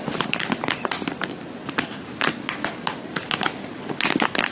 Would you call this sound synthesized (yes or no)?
no